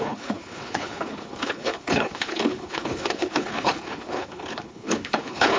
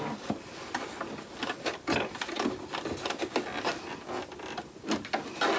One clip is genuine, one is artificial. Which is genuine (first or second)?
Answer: second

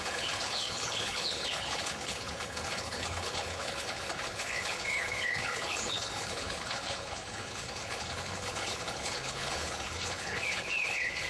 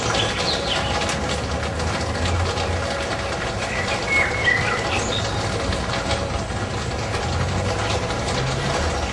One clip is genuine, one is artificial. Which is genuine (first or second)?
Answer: second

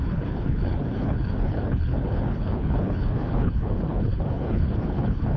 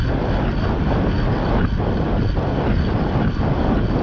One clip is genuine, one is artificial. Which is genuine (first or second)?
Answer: second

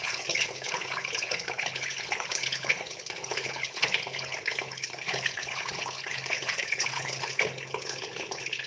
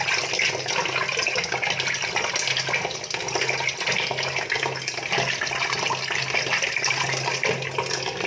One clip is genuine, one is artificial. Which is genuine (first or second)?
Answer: second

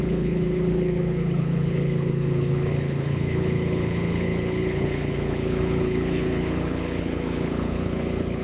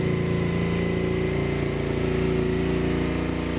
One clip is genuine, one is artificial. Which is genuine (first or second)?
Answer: second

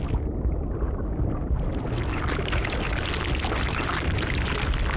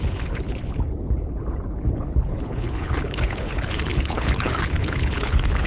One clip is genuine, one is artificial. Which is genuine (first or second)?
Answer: first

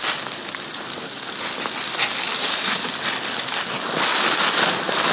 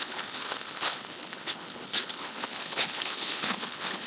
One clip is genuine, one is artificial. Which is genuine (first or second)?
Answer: first